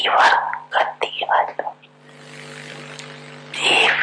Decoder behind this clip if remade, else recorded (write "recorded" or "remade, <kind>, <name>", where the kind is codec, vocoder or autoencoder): recorded